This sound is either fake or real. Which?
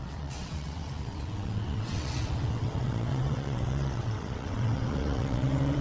fake